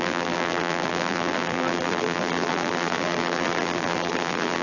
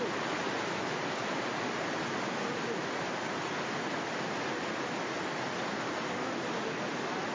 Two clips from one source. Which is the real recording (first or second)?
second